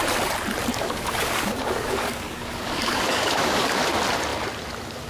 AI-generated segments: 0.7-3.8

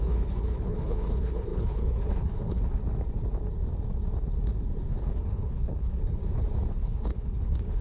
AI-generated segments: 0.0-2.8; 4.9-6.2; 6.7-7.8

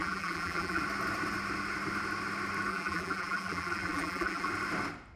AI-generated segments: 0.0-0.8; 2.7-4.5

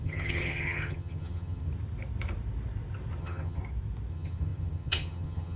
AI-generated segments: 0.0-1.7; 3.2-3.6; 4.1-5.6

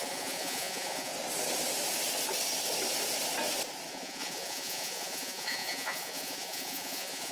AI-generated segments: 0.0-1.1; 3.9-7.3

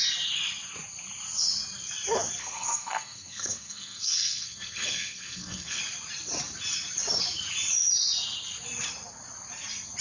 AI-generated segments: 2.4-5.8

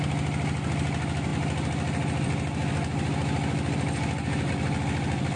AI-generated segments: none

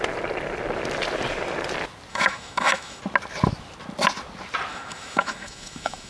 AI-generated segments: 2.1-3.0; 4.7-6.1